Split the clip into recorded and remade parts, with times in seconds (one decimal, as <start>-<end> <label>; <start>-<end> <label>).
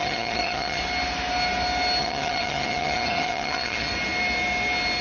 0.0-0.8 remade; 0.8-2.0 recorded; 2.0-3.9 remade; 3.9-5.0 recorded